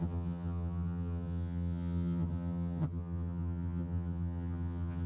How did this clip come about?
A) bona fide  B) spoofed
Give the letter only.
B